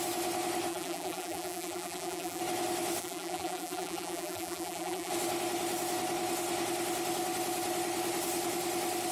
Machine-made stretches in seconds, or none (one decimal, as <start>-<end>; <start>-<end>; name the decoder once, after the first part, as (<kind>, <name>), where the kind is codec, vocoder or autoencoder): 0.7-2.4 (vocoder, BigVGAN v2); 3.0-5.1